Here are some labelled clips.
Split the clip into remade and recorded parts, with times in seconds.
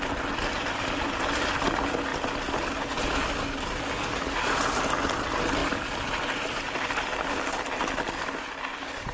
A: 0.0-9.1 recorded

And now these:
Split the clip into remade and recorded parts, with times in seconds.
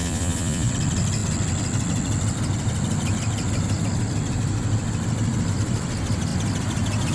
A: 0.0-0.7 remade; 0.7-7.1 recorded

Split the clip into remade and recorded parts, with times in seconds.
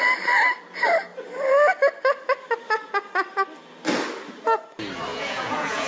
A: 0.0-5.1 recorded; 5.1-5.9 remade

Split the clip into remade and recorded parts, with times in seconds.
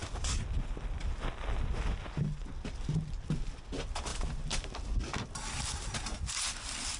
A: 0.0-7.0 recorded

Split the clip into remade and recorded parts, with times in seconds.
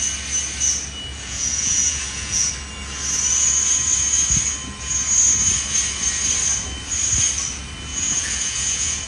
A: 0.0-1.1 recorded; 1.1-2.5 remade; 2.5-7.9 recorded; 7.9-9.1 remade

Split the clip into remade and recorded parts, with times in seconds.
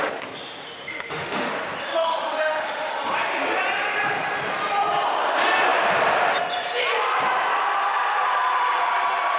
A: 0.0-0.9 recorded; 0.9-1.5 remade; 1.5-1.9 recorded; 1.9-2.9 remade; 2.9-9.4 recorded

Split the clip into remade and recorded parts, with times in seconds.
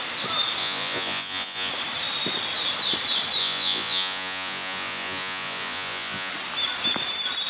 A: 0.0-0.6 recorded; 0.6-1.7 remade; 1.7-3.4 recorded; 3.4-6.3 remade; 6.3-7.5 recorded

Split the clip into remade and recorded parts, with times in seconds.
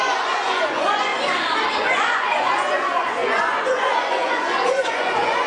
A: 0.0-1.1 remade; 1.1-1.7 recorded; 1.7-5.5 remade